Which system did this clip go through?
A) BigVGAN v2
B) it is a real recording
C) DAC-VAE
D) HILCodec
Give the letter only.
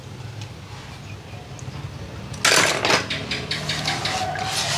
B